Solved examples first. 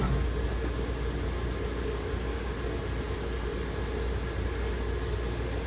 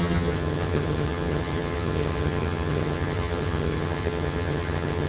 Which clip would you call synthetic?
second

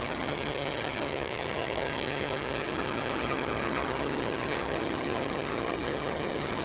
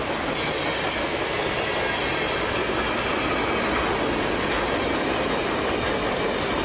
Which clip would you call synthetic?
first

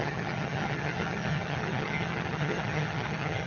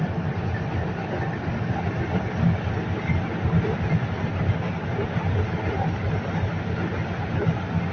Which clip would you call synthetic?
first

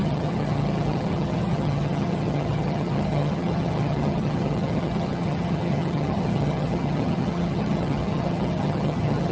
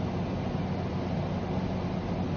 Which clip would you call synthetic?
first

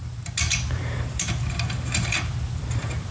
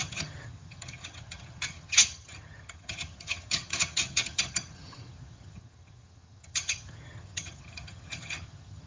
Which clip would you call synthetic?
second